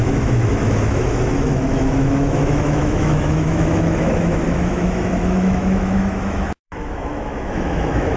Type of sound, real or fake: fake